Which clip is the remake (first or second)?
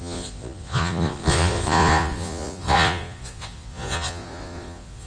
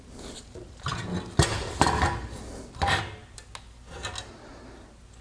first